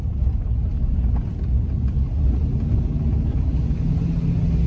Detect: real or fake real